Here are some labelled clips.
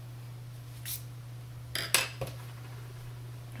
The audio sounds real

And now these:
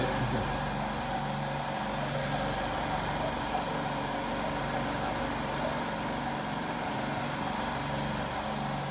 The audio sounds real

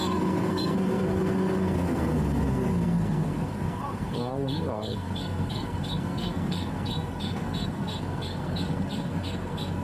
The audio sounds fake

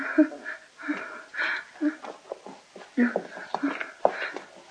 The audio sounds real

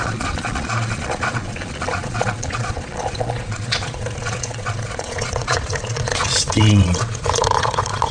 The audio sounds fake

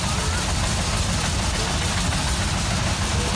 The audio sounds real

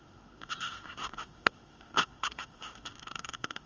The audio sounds fake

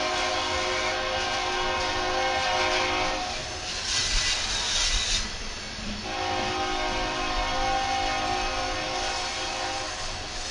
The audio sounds real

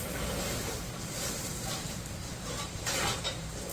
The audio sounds fake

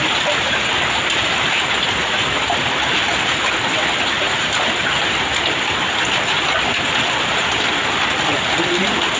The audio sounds real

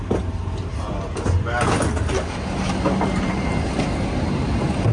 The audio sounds real